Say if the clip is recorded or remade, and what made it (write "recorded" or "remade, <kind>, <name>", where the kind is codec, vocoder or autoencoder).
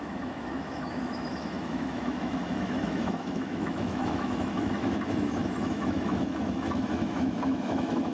remade, autoencoder, DAC-VAE